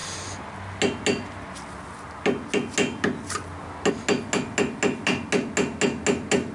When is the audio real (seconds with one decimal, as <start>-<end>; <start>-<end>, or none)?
0.0-6.5